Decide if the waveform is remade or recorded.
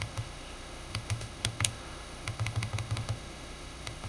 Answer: remade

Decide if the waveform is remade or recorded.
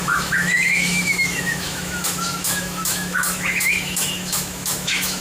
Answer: remade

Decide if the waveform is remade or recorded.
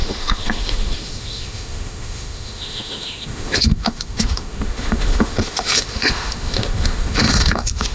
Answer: remade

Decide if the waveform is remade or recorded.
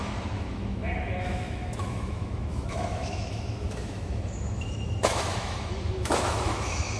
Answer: remade